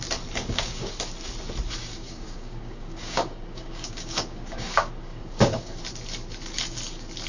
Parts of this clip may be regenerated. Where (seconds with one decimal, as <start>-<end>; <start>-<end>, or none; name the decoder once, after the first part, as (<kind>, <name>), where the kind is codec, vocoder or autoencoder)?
0.4-1.0 (codec, DAC); 1.9-5.8